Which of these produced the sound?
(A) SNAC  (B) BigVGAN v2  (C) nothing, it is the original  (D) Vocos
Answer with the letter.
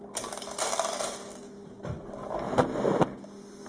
C